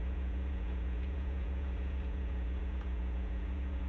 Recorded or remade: remade